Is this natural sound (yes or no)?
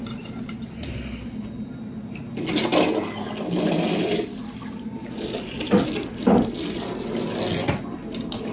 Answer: yes